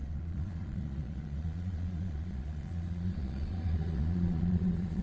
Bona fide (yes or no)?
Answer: no